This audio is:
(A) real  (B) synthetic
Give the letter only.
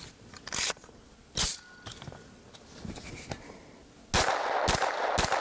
A